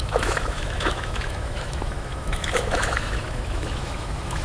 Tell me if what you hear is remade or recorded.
remade